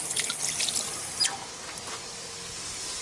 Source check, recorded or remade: recorded